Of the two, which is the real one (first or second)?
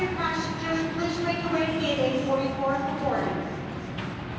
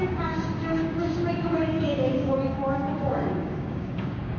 first